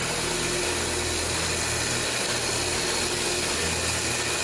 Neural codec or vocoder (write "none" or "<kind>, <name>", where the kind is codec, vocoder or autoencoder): none